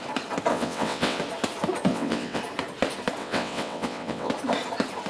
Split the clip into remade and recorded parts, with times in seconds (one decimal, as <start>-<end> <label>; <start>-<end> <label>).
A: 0.0-0.5 recorded; 0.5-1.2 remade; 1.2-1.9 recorded; 1.9-2.4 remade; 2.4-3.2 recorded; 3.2-4.3 remade; 4.3-5.1 recorded